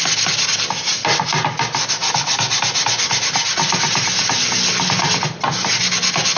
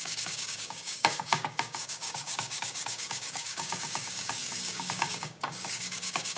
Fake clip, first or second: second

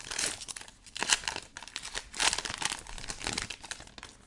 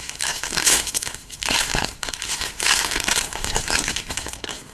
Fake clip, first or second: second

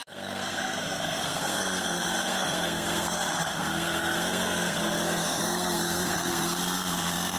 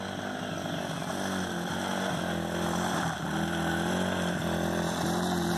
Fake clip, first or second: first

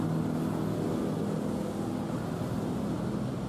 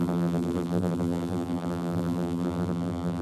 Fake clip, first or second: second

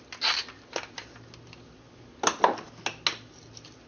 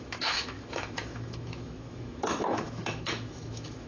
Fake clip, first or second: second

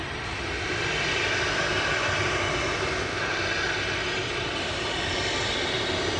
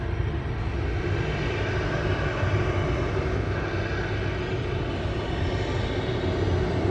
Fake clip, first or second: first